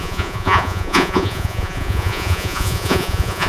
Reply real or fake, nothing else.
fake